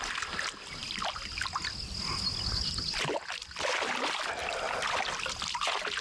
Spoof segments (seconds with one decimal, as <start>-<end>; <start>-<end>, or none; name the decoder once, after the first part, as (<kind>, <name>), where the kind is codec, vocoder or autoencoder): none